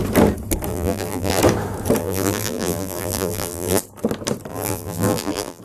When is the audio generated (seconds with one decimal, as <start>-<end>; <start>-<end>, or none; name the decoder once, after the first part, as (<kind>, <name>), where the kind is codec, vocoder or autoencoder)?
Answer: 0.7-1.4 (vocoder, BigVGAN v2); 2.0-3.8; 4.5-5.6